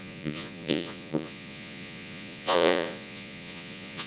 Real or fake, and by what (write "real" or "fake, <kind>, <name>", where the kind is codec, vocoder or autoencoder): fake, vocoder, Vocos